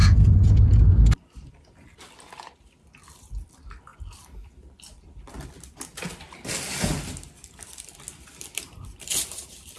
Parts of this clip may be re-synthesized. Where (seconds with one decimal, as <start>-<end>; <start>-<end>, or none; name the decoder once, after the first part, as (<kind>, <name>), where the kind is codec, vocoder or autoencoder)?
0.0-0.8 (vocoder, Vocos)